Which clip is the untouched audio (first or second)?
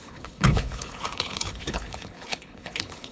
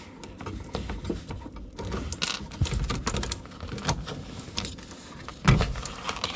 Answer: second